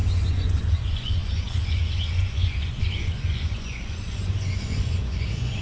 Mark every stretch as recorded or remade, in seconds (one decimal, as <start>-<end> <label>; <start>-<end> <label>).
0.0-5.6 remade